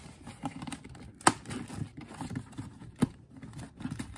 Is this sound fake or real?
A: real